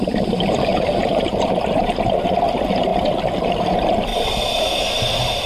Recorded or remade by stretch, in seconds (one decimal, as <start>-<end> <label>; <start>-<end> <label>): 0.0-4.1 remade; 4.1-4.8 recorded; 4.8-5.5 remade